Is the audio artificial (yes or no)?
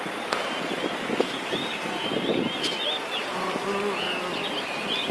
no